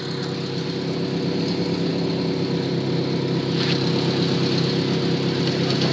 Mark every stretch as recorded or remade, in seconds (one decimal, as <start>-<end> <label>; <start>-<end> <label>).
0.0-5.9 recorded